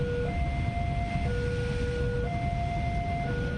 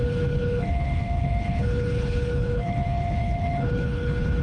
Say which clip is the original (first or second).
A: first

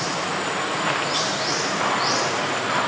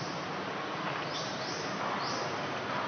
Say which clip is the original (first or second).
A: first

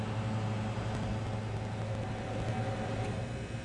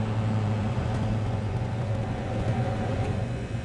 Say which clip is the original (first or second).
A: first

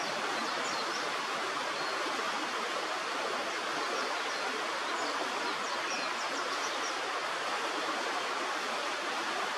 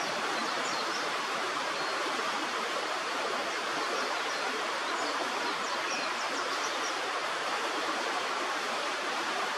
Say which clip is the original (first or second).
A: first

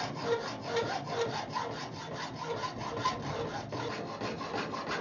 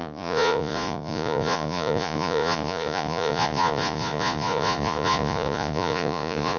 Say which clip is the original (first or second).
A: first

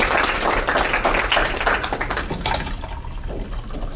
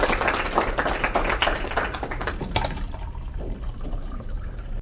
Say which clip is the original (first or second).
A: first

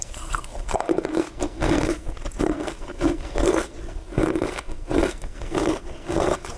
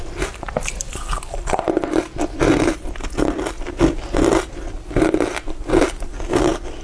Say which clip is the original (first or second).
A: second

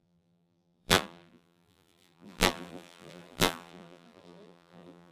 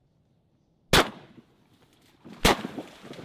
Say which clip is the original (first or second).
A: second